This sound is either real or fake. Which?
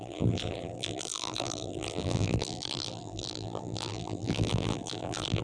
fake